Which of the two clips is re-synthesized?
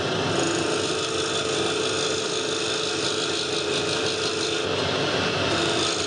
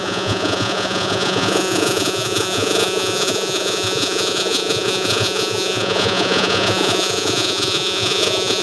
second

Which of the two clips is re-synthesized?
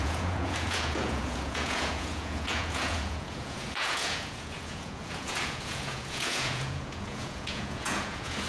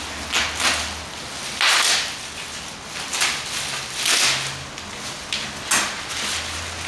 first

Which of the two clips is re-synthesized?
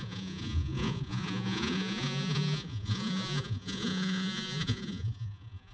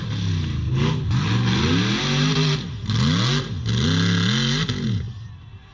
first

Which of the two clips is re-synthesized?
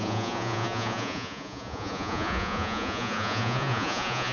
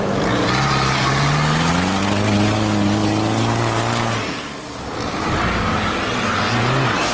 first